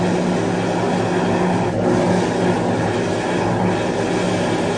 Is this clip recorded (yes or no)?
yes